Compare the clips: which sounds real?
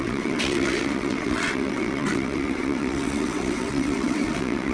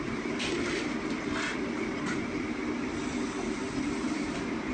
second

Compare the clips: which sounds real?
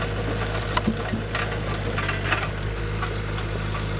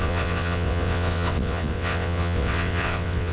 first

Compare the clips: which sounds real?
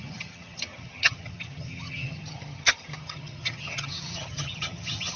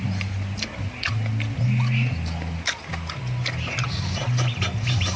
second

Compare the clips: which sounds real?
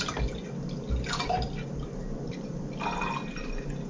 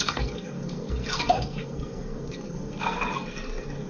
first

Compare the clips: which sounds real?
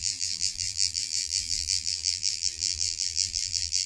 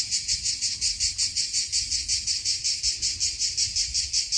second